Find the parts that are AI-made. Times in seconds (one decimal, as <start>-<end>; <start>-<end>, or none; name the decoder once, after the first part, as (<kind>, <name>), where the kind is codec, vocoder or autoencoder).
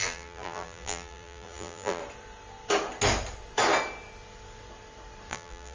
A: 0.0-2.0 (vocoder, BigVGAN v2); 5.3-5.7